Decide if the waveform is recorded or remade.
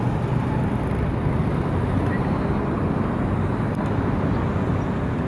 recorded